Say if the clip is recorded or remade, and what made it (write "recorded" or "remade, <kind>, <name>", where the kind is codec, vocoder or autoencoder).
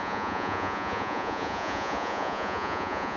remade, vocoder, Vocos